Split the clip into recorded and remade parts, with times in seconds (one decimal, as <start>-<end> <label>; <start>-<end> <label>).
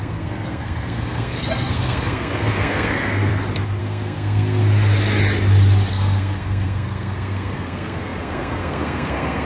0.0-3.3 remade; 3.3-3.8 recorded; 3.8-4.6 remade; 4.6-5.9 recorded; 5.9-9.4 remade